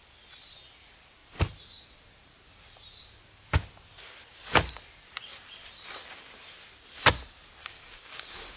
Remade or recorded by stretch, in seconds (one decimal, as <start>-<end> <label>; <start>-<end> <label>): 0.0-7.6 recorded; 7.6-8.6 remade